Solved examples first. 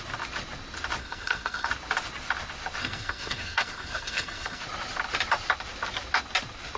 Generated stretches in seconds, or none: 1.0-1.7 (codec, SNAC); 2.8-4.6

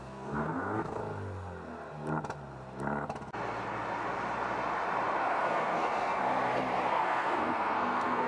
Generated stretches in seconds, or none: 0.0-1.0 (codec, SNAC); 5.2-6.2; 6.9-8.3